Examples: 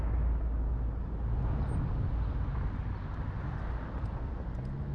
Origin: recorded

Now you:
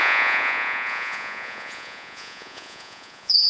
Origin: remade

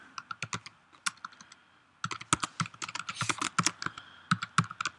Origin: recorded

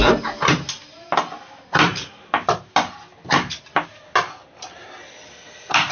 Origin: recorded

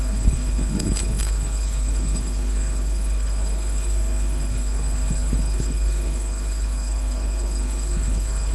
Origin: remade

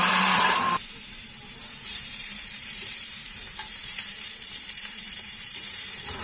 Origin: remade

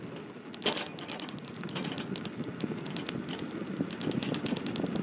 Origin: recorded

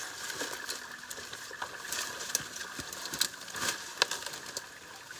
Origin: recorded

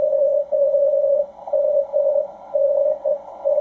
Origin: remade